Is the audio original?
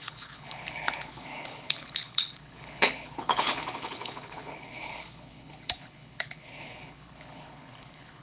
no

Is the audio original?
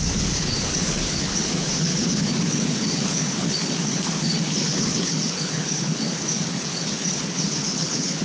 no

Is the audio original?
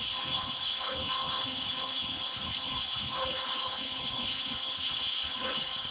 no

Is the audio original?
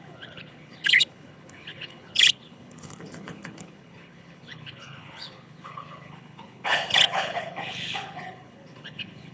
no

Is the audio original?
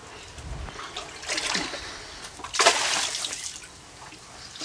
yes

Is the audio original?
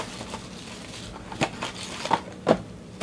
yes